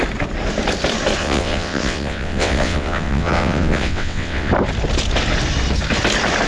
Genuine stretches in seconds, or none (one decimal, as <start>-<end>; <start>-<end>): 0.0-1.2; 4.5-6.5